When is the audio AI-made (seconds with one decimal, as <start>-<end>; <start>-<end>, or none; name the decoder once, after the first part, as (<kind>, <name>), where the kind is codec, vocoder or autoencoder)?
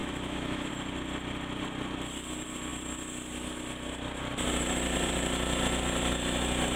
0.0-0.7 (autoencoder, DAC-VAE)